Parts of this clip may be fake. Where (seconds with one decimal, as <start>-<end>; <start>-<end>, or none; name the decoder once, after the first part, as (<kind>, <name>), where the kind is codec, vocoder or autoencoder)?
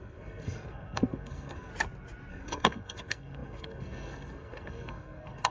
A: 0.0-1.7 (codec, SNAC); 2.3-5.5